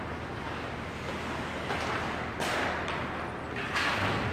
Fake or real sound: real